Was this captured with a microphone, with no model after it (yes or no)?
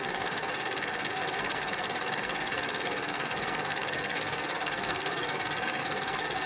no